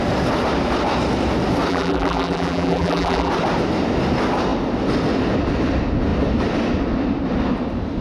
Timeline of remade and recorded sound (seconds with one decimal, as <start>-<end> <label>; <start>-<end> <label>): 0.0-1.7 recorded; 1.7-3.3 remade; 3.3-8.0 recorded